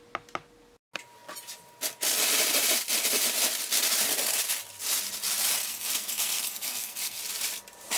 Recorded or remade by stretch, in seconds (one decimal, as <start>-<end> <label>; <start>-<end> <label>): 0.0-5.6 recorded; 5.6-7.2 remade; 7.2-8.0 recorded